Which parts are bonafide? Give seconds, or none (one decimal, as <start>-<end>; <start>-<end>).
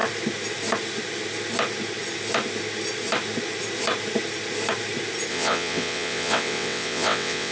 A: 0.0-5.3